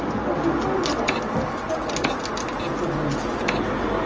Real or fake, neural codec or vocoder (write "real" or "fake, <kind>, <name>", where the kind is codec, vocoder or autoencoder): real